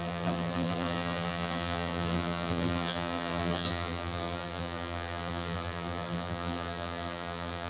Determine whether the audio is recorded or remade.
remade